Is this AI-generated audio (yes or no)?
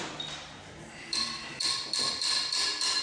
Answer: no